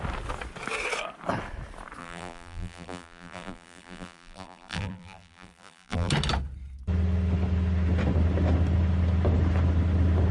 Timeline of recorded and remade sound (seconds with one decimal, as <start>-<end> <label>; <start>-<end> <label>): 0.0-2.0 recorded; 2.0-6.1 remade; 6.1-10.3 recorded